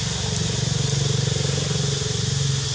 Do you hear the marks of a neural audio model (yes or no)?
no